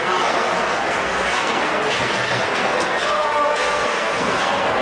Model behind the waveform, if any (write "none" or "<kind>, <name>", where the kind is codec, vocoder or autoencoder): codec, SNAC